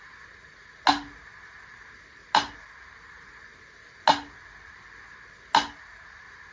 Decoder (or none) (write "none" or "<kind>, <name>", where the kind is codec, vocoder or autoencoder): none